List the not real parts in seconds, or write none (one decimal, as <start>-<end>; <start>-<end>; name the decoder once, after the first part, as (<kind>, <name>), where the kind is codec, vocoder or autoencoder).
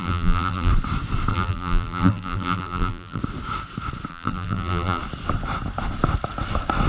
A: 0.0-0.7 (vocoder, BigVGAN v2); 1.3-3.2; 4.1-5.0